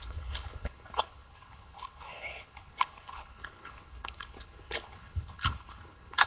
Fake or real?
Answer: fake